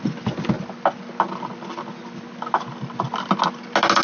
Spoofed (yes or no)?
no